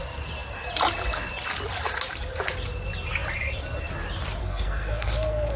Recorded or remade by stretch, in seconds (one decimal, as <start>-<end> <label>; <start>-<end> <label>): 0.0-4.4 recorded; 4.4-5.6 remade